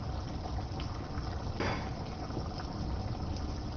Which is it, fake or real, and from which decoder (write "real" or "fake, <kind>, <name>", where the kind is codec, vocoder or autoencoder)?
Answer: real